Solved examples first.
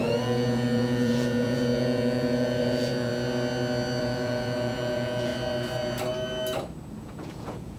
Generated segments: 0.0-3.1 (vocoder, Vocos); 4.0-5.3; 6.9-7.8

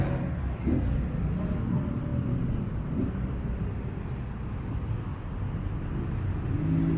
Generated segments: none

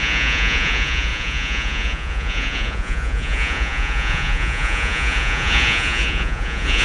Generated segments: 0.0-6.8 (vocoder, Vocos)

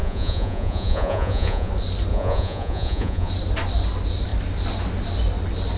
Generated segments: 0.0-1.7 (vocoder, Vocos); 2.1-3.3

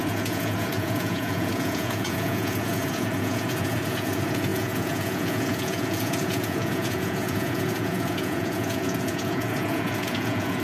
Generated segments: 0.0-10.6 (vocoder, Vocos)